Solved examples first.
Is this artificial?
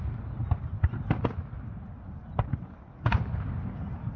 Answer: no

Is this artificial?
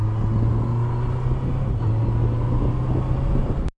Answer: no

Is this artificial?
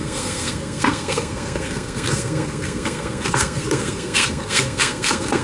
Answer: yes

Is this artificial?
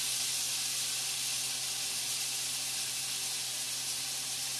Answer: no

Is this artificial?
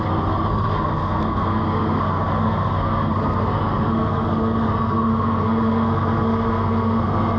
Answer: yes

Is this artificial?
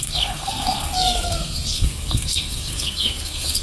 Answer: yes